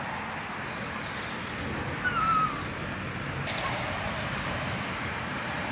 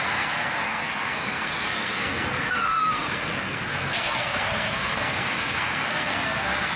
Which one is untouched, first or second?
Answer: first